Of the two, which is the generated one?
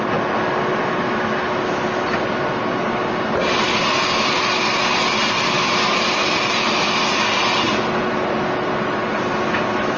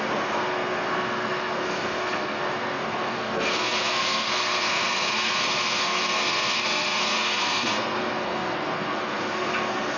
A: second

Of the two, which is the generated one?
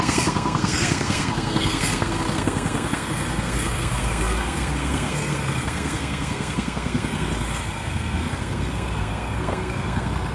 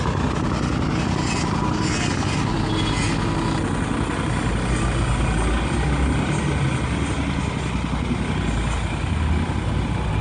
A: first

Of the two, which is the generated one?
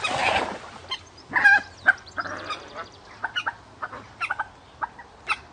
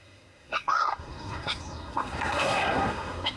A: second